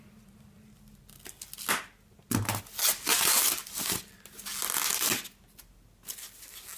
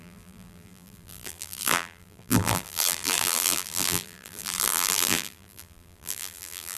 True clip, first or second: first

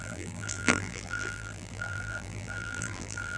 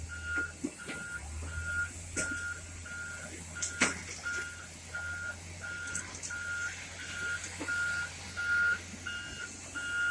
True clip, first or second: second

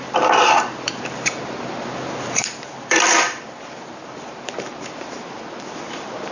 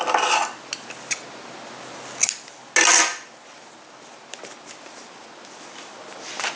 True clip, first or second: second